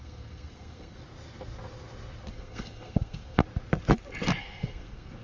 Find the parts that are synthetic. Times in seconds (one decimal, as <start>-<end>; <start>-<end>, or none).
0.0-1.0; 2.3-3.4; 4.4-5.2